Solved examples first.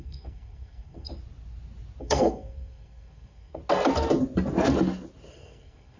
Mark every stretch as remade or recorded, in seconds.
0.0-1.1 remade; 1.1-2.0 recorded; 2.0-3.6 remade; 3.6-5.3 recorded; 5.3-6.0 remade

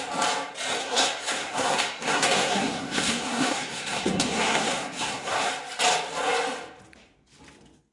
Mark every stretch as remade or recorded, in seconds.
0.0-0.8 recorded; 0.8-5.5 remade; 5.5-7.9 recorded

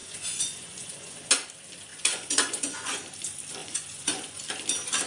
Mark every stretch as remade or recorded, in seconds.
0.0-1.3 remade; 1.3-1.9 recorded; 1.9-3.0 remade; 3.0-3.6 recorded; 3.6-4.4 remade; 4.4-5.1 recorded

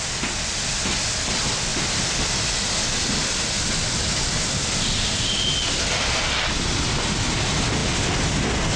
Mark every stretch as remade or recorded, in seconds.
0.0-8.8 recorded

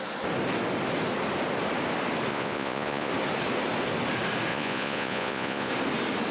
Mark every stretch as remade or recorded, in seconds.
0.0-2.3 recorded; 2.3-3.1 remade; 3.1-4.5 recorded; 4.5-5.7 remade; 5.7-6.3 recorded

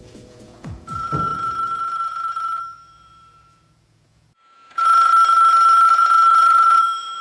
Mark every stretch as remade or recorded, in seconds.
0.0-5.1 remade; 5.1-5.9 recorded; 5.9-7.2 remade